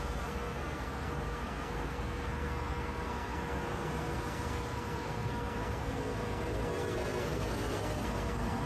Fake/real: fake